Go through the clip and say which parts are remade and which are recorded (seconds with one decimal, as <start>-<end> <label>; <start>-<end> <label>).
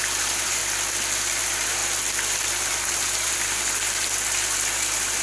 0.0-0.6 remade; 0.6-1.4 recorded; 1.4-1.8 remade; 1.8-2.5 recorded; 2.5-5.2 remade